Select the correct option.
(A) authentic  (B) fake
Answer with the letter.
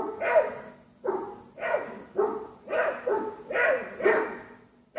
A